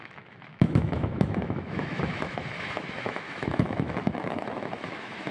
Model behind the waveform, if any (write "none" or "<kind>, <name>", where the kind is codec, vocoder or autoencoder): autoencoder, DAC-VAE